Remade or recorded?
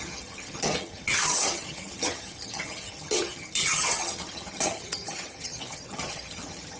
remade